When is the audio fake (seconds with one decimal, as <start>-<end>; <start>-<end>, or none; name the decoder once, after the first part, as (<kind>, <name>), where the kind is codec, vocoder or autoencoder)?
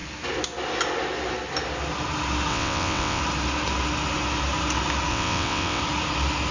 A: 2.5-3.2 (vocoder, WaveNeXt); 5.1-5.8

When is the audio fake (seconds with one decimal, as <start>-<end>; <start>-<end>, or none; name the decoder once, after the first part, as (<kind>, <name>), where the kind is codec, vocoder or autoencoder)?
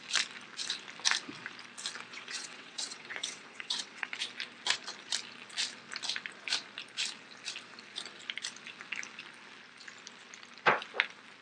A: 2.1-4.1 (vocoder, WaveNeXt)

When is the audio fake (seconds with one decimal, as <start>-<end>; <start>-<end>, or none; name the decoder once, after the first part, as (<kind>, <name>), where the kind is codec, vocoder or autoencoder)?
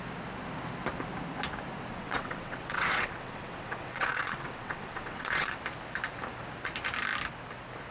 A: 1.9-5.6 (vocoder, WaveNeXt)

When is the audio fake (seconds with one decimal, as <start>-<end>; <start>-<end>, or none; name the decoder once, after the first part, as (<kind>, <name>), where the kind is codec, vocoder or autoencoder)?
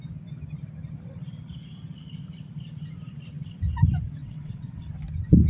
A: 4.2-4.9 (vocoder, WaveNeXt)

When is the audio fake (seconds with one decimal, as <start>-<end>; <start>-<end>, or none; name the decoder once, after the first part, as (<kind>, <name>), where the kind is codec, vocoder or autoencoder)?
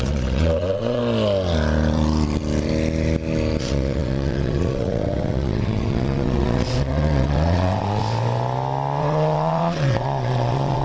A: 0.0-1.0 (vocoder, WaveNeXt); 3.6-8.0; 9.0-10.8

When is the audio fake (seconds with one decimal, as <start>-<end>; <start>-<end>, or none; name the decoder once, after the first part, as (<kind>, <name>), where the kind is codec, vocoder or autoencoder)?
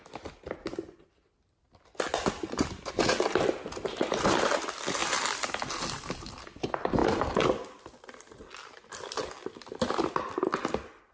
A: none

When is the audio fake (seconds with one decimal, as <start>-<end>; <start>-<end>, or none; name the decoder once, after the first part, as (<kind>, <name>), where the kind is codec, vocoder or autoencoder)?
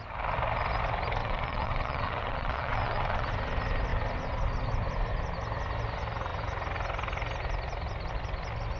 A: 1.2-3.3 (vocoder, WaveNeXt)